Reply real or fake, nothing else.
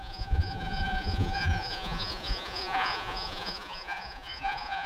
fake